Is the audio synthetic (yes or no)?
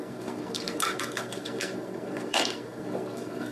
yes